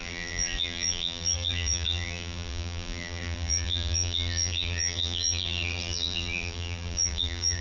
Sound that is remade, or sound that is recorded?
remade